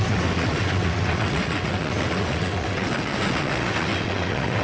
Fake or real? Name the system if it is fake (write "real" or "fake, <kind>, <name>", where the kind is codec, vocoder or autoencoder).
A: fake, vocoder, WaveNeXt